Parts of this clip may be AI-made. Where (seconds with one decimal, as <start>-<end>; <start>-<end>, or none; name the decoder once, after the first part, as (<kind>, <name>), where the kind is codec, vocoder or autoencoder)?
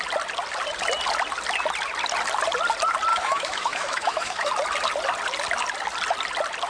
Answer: 3.1-4.5 (autoencoder, DAC-VAE)